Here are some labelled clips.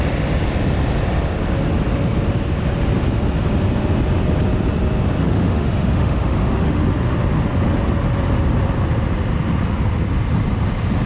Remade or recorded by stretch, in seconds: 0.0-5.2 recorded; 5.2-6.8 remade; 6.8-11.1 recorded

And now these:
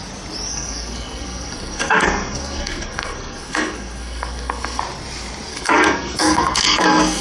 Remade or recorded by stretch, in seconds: 0.0-0.5 recorded; 0.5-4.8 remade; 4.8-5.5 recorded; 5.5-7.2 remade

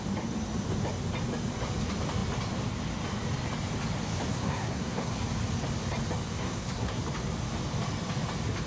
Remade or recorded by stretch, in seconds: 0.0-4.3 recorded; 4.3-5.1 remade; 5.1-6.4 recorded; 6.4-7.0 remade; 7.0-8.7 recorded